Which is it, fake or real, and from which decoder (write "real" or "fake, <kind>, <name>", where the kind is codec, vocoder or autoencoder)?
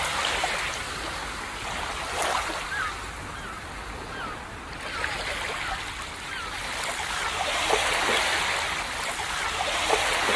real